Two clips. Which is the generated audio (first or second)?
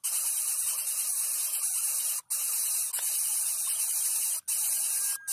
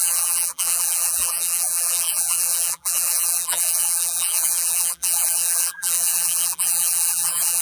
second